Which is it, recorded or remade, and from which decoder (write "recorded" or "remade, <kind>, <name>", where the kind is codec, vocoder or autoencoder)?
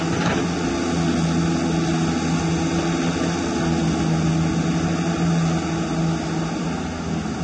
recorded